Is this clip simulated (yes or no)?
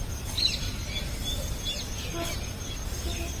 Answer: no